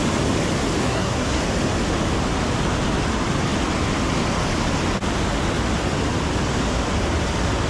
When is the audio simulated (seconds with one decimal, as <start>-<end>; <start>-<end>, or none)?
0.8-1.4